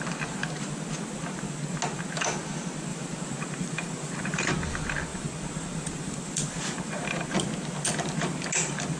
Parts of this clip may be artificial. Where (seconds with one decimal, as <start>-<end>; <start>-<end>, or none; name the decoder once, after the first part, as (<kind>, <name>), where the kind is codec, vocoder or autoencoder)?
2.9-4.5 (vocoder, BigVGAN v2); 5.1-7.0